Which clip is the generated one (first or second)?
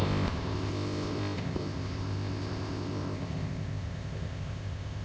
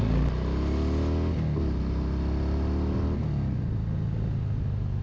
first